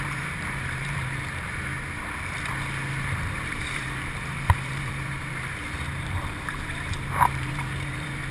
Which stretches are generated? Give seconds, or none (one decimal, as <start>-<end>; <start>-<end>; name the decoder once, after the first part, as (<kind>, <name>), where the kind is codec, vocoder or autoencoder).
0.0-1.7 (vocoder, BigVGAN v2); 3.3-8.3